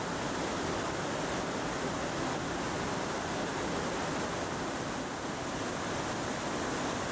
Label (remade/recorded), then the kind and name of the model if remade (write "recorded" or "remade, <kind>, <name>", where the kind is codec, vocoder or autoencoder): recorded